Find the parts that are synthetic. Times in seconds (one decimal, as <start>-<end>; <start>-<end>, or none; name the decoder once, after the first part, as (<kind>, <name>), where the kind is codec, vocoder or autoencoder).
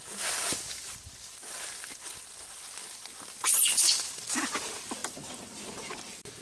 none